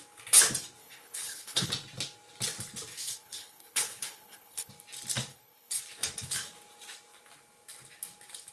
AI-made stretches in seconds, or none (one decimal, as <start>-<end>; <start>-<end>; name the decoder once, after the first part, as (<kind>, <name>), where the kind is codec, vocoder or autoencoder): 0.8-1.7 (codec, HILCodec); 2.9-4.7; 5.3-5.8